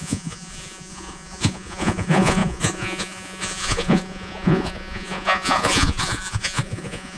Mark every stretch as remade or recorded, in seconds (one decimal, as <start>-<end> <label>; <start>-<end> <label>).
0.0-7.2 remade